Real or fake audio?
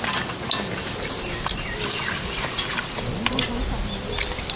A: real